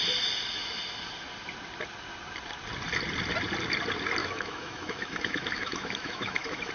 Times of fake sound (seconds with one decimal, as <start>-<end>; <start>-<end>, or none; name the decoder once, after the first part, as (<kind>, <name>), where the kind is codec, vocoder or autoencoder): 4.2-6.7 (autoencoder, DAC-VAE)